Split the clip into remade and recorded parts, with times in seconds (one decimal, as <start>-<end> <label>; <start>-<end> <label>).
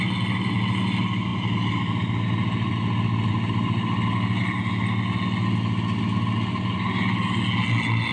0.0-8.1 recorded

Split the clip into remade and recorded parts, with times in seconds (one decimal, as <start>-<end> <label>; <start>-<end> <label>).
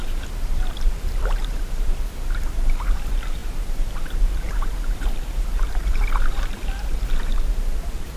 0.0-8.2 remade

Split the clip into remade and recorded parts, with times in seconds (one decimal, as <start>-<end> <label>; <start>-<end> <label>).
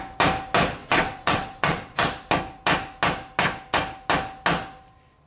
0.0-0.8 recorded; 0.8-2.1 remade; 2.1-5.3 recorded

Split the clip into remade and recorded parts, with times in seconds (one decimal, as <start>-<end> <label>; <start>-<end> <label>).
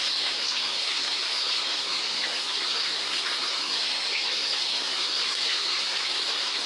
0.0-6.7 remade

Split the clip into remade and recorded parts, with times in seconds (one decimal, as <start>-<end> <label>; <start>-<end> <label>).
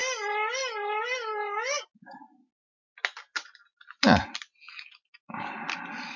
0.0-3.6 recorded; 3.6-6.2 remade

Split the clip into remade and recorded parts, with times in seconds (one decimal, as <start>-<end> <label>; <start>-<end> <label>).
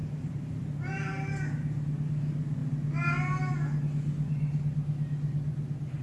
0.0-1.1 remade; 1.1-6.0 recorded